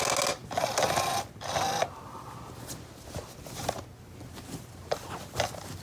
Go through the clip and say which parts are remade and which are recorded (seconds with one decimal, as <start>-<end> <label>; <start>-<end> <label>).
0.0-5.8 recorded